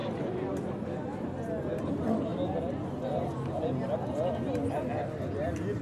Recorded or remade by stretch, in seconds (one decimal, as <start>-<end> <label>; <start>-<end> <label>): 0.0-5.8 recorded